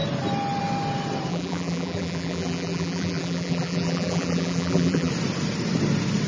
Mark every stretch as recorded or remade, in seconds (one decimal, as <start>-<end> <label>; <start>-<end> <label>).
0.0-1.3 recorded; 1.3-5.1 remade; 5.1-6.3 recorded